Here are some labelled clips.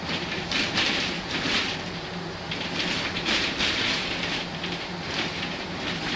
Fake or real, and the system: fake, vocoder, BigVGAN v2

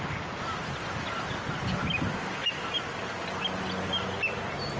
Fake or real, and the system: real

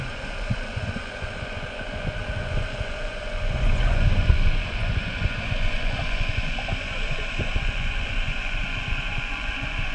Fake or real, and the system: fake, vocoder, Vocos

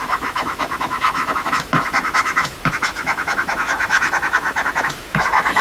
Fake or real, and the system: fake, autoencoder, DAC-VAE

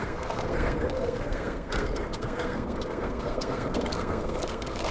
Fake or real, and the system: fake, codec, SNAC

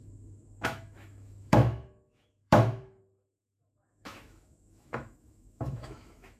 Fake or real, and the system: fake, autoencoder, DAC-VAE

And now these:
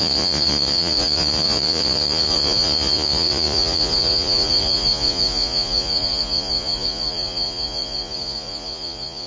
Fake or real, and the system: fake, vocoder, Vocos